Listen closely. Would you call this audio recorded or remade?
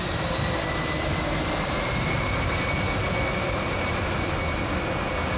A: recorded